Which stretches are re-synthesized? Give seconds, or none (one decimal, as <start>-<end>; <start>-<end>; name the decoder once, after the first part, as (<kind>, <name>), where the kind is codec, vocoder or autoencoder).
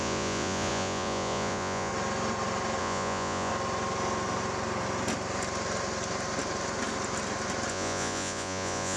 0.0-1.9 (vocoder, Vocos); 2.8-3.5; 7.7-9.0